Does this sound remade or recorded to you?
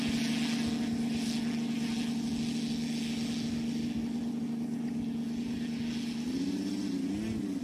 recorded